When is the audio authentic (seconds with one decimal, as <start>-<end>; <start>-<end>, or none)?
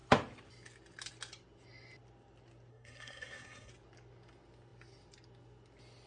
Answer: 0.0-2.7; 3.7-6.1